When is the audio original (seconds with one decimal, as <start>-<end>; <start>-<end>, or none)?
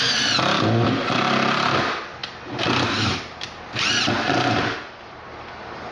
0.0-5.9